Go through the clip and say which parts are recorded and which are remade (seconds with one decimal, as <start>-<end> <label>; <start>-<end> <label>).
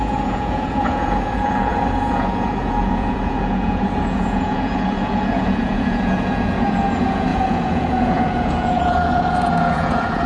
0.0-10.3 remade